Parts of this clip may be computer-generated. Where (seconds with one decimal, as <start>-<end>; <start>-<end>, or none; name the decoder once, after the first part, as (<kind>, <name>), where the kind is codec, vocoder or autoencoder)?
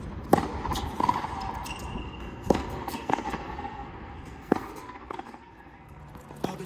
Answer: 2.0-6.0 (codec, SNAC)